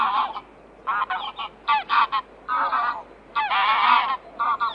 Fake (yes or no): no